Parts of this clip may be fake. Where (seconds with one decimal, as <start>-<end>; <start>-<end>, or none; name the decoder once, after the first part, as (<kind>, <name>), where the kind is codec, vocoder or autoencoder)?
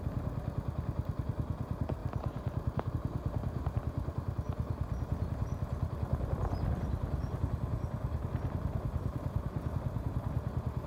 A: 2.0-2.9 (vocoder, BigVGAN v2)